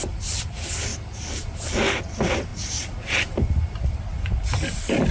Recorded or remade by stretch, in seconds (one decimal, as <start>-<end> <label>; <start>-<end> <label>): 0.0-0.9 remade; 0.9-2.0 recorded; 2.0-2.5 remade; 2.5-3.9 recorded; 3.9-5.1 remade